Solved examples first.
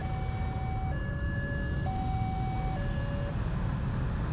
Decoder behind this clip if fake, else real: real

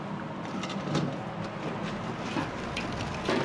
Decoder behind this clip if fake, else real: real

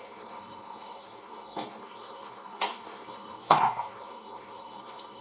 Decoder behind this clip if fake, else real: fake, codec, SNAC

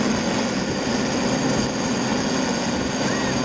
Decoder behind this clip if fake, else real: real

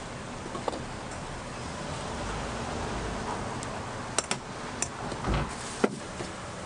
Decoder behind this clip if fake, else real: real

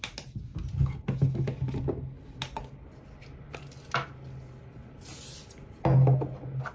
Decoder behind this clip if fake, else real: real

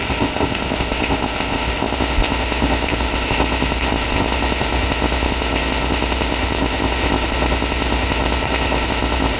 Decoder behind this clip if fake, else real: fake, codec, ZipCodec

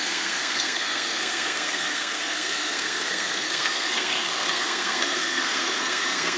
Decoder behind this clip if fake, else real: fake, codec, SNAC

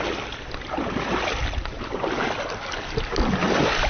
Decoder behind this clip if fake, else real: real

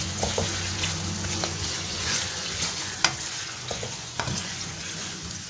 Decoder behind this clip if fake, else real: fake, vocoder, Vocos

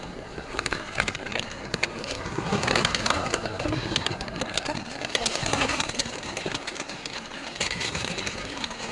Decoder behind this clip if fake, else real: fake, codec, SNAC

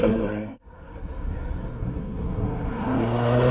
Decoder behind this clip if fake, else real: fake, codec, SNAC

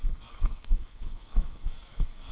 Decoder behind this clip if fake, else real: fake, codec, SNAC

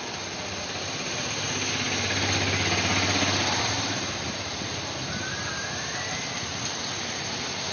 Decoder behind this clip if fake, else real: real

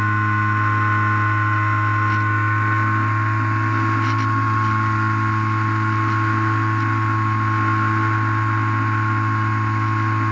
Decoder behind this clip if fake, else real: real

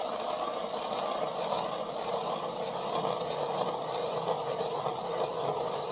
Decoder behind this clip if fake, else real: real